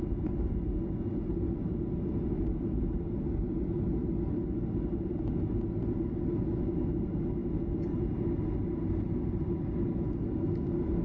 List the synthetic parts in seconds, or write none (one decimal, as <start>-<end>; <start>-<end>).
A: none